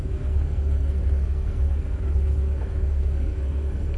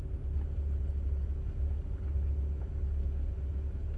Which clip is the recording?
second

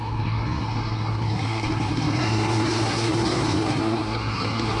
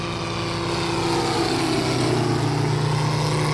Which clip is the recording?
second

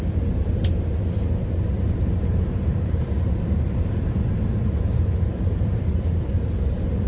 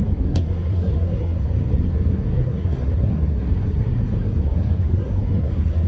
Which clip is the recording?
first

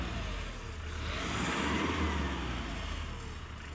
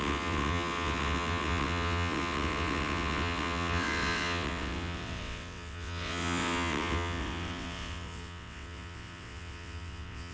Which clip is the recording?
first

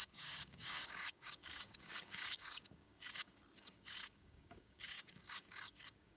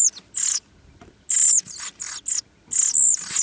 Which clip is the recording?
second